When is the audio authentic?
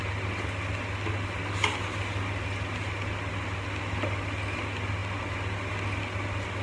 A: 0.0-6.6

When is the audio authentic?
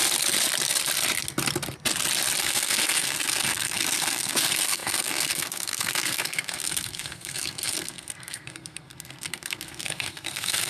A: 0.0-2.4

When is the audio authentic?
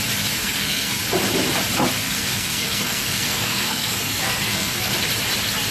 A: 0.0-0.4; 1.0-2.0; 4.9-5.7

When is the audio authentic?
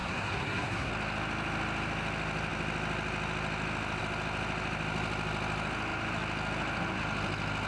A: 0.9-7.7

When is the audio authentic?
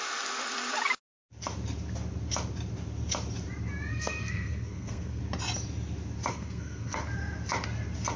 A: 0.0-3.9; 5.2-6.3; 7.0-8.2